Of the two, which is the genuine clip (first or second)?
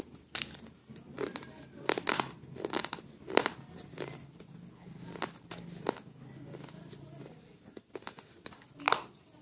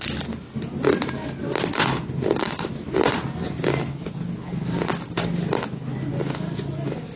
second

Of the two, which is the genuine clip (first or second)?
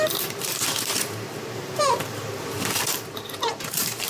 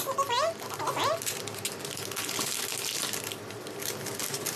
second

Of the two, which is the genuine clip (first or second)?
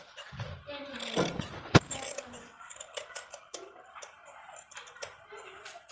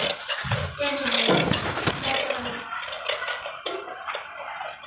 second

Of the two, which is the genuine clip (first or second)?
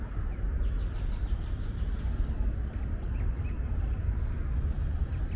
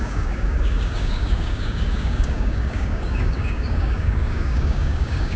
first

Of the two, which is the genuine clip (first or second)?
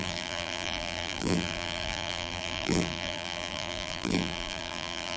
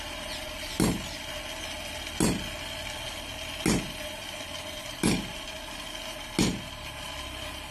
second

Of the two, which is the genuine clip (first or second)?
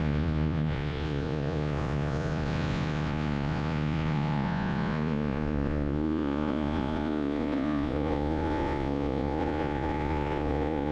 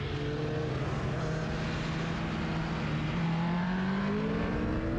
second